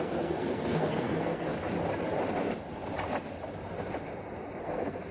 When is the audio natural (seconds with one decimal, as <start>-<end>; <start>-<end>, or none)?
1.5-4.6